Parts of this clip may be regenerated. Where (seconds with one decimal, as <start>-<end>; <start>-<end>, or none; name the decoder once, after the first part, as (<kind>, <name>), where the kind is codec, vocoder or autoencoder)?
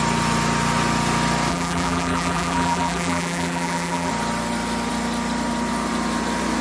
1.5-4.1 (vocoder, BigVGAN v2)